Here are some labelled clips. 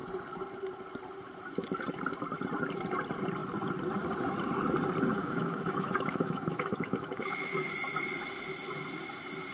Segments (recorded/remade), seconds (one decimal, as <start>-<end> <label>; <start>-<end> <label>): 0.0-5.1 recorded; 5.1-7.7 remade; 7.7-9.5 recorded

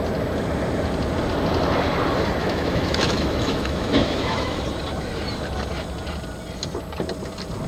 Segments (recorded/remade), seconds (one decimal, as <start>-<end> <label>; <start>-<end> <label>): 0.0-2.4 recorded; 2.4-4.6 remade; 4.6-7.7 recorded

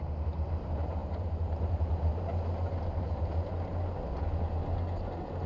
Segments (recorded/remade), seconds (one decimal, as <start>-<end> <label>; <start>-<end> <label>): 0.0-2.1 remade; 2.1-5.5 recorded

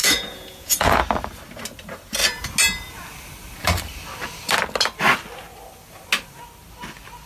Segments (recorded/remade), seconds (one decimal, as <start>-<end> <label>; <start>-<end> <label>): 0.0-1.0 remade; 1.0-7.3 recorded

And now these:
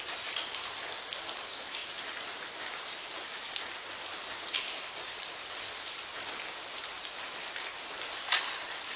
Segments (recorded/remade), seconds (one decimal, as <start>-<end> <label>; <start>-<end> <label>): 0.0-9.0 recorded

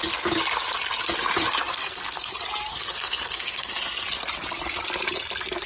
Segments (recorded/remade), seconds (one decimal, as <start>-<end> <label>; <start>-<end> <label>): 0.0-1.7 recorded; 1.7-2.3 remade; 2.3-2.7 recorded; 2.7-3.7 remade; 3.7-5.7 recorded

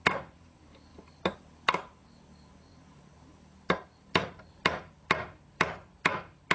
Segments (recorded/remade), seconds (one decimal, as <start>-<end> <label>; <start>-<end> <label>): 0.0-0.9 recorded; 0.9-1.8 remade; 1.8-6.5 recorded